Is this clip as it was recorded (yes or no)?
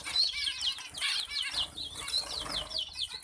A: yes